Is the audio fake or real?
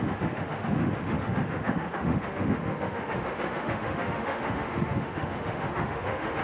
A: fake